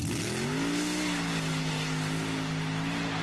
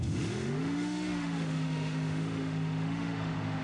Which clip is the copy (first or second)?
second